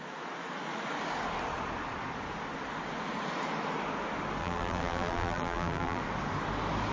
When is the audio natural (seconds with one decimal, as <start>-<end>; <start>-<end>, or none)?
0.0-4.4; 6.0-6.9